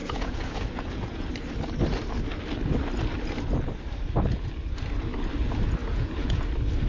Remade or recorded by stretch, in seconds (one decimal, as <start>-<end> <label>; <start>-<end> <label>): 0.0-1.3 remade; 1.3-5.8 recorded; 5.8-6.4 remade; 6.4-6.9 recorded